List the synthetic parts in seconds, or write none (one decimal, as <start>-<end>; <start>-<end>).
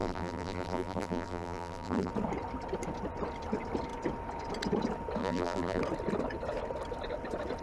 0.0-2.1; 5.2-5.8